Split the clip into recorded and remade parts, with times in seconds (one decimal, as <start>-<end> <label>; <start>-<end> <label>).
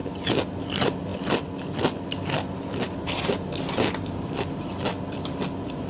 0.0-5.9 recorded